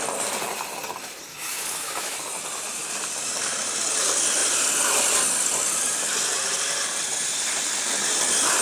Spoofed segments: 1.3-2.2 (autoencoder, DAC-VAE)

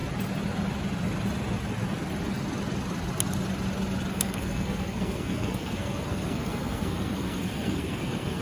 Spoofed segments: 4.1-8.4 (codec, SNAC)

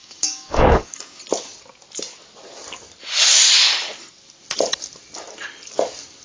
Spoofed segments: 0.0-1.2 (codec, DAC)

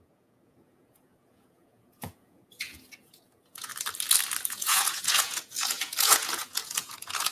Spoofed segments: 0.0-3.7 (vocoder, Vocos); 4.5-7.3

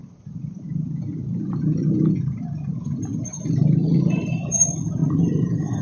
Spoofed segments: 0.0-5.8 (vocoder, BigVGAN v2)

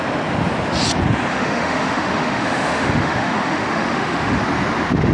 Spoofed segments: 1.3-4.4 (autoencoder, DAC-VAE)